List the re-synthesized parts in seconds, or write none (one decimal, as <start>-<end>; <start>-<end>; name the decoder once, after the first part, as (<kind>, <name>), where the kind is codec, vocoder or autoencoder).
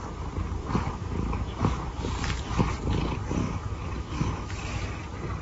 0.6-2.0 (autoencoder, DAC-VAE); 3.4-4.5